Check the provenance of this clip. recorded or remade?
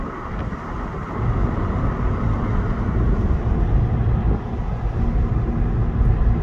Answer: recorded